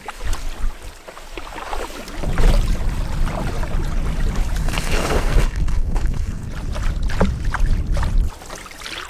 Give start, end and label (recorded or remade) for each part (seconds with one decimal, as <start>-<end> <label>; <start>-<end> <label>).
0.0-4.6 recorded; 4.6-6.5 remade; 6.5-9.1 recorded